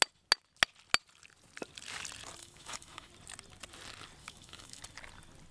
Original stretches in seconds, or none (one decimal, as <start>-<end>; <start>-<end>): 0.0-2.4; 3.1-4.2; 4.8-5.5